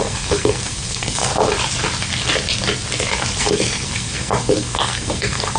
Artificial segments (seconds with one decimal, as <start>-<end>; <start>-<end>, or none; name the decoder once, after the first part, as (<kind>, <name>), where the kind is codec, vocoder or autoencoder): 0.0-1.3 (codec, SNAC); 3.4-5.6